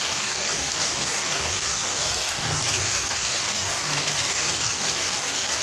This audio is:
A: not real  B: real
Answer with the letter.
A